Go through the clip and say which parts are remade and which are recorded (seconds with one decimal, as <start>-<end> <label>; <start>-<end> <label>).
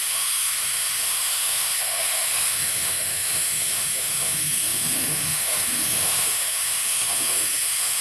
0.0-8.0 remade